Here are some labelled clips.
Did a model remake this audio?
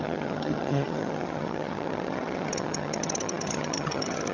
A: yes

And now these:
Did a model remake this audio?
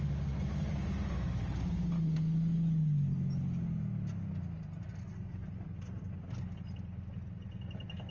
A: no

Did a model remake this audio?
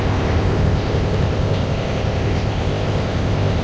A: yes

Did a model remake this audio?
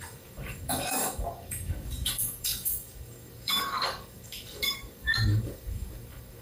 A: yes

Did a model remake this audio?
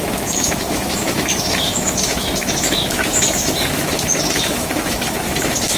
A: yes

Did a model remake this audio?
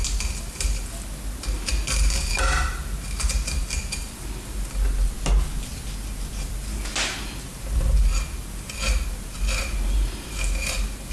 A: no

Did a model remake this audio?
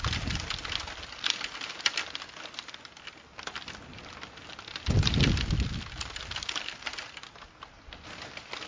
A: no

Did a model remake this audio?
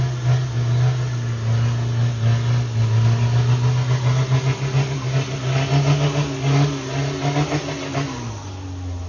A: no